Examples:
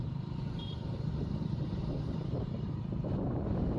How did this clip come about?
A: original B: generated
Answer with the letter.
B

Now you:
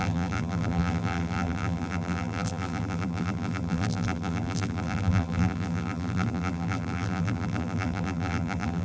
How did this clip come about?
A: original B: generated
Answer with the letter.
B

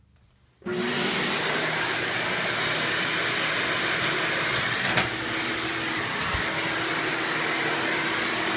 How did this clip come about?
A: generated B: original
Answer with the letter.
B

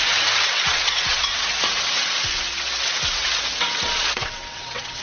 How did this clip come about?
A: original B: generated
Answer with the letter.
B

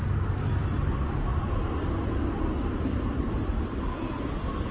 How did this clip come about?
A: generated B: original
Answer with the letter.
A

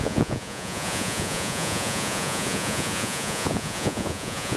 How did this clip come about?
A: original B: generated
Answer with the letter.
B